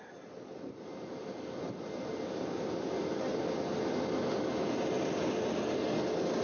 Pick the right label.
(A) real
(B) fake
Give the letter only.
A